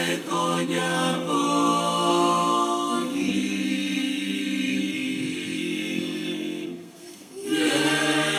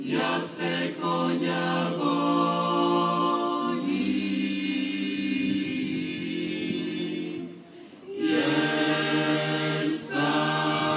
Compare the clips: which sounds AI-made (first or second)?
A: first